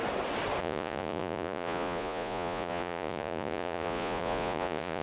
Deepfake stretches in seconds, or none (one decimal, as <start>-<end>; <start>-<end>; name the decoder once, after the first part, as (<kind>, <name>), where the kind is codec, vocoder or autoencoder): 0.6-5.0 (vocoder, Vocos)